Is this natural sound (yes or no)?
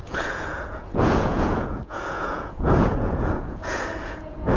no